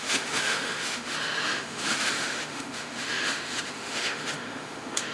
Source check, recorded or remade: remade